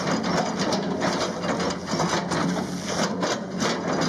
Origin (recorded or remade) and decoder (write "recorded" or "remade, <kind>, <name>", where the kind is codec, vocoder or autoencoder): recorded